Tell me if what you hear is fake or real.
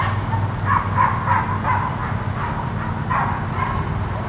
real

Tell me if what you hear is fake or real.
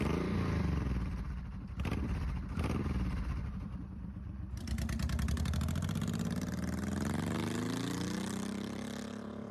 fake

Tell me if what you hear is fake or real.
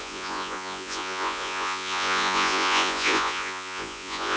fake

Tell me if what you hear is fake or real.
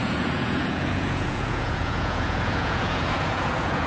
fake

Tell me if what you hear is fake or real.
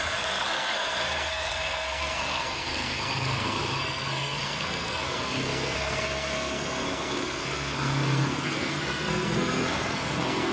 fake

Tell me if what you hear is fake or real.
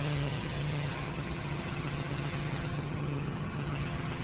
fake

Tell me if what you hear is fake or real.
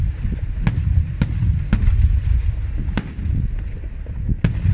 real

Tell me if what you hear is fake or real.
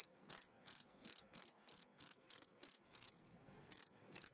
fake